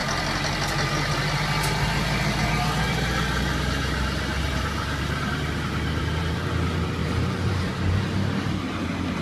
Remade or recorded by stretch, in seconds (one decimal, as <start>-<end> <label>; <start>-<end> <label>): 0.0-4.5 recorded; 4.5-6.5 remade; 6.5-7.0 recorded; 7.0-8.0 remade; 8.0-9.2 recorded